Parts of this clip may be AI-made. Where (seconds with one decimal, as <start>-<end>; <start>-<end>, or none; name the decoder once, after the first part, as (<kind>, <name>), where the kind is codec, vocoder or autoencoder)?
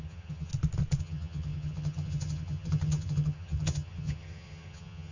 0.0-0.5 (vocoder, HiFi-GAN); 1.0-5.1